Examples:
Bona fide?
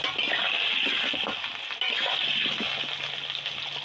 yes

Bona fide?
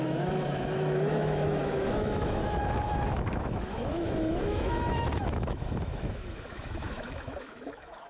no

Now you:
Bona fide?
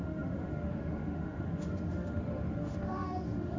no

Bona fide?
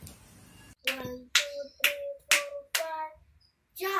yes